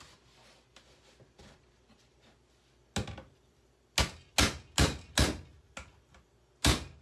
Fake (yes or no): no